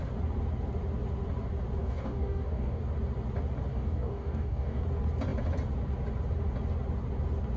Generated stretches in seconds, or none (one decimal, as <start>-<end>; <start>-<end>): 1.8-2.8; 3.7-4.8